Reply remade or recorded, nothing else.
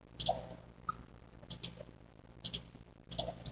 recorded